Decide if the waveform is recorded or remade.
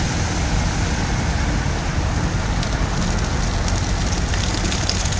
recorded